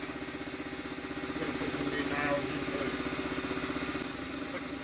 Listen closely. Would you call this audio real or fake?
real